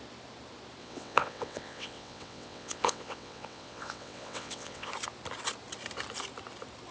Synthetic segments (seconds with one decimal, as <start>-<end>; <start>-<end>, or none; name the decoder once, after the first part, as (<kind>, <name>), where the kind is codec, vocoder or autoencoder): 0.8-4.9 (vocoder, WaveNeXt)